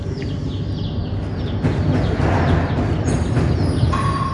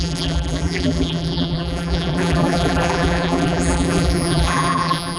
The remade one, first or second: second